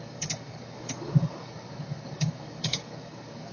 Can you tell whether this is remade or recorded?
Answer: remade